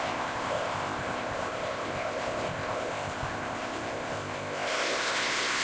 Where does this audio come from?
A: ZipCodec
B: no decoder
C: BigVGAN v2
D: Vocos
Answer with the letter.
A